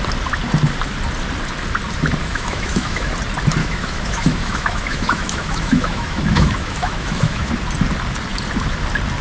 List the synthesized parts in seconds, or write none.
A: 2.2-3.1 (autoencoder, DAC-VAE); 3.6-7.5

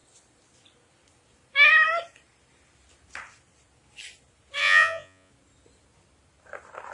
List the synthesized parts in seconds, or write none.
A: 4.6-5.3 (vocoder, Vocos)

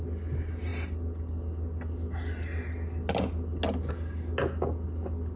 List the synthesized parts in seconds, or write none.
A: none

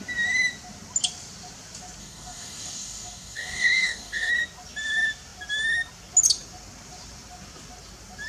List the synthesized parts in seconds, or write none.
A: 2.0-4.3 (codec, DAC)